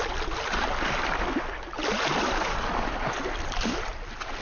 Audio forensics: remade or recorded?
recorded